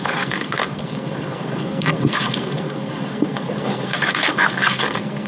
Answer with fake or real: fake